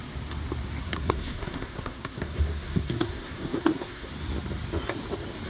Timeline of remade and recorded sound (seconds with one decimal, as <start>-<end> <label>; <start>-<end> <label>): 0.0-0.8 recorded; 0.8-4.1 remade; 4.1-5.5 recorded